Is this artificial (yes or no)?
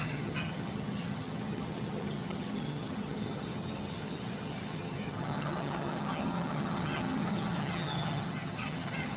yes